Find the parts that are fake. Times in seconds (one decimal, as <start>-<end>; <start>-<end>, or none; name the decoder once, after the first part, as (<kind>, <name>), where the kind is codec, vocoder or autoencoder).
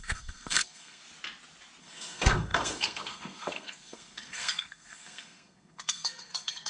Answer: 0.0-1.0 (codec, SNAC); 1.8-6.7